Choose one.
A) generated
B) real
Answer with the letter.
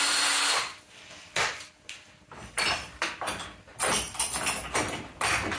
B